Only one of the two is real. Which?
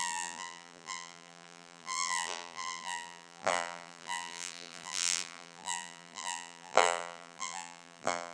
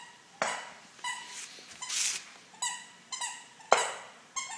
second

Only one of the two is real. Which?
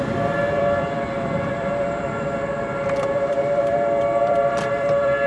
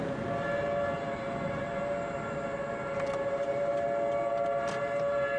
second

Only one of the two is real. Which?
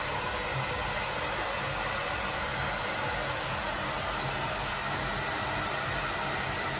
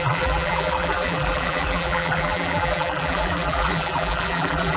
first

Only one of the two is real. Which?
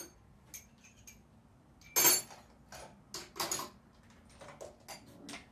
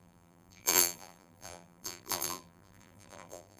first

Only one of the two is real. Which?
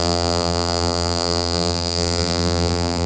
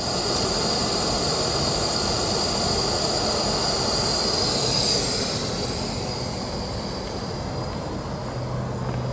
second